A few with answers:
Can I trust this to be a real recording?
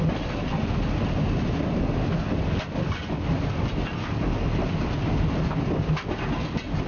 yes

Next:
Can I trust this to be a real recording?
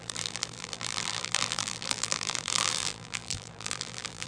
no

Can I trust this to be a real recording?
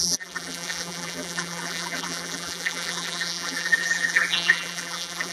no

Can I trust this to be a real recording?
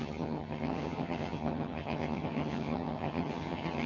no